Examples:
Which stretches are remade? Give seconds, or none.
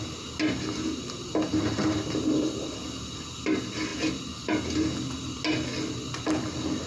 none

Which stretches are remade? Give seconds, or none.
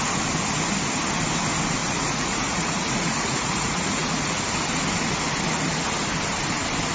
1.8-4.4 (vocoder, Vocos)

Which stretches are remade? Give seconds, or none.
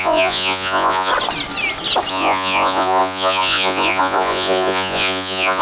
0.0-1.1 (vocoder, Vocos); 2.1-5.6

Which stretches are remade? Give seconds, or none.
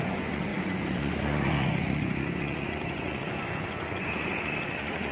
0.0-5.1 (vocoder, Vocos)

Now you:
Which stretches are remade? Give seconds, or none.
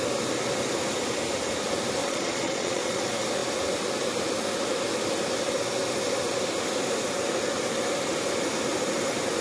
2.0-3.0 (vocoder, Vocos)